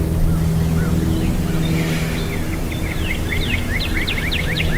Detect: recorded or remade recorded